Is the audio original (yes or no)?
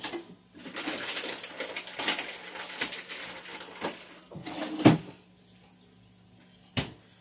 yes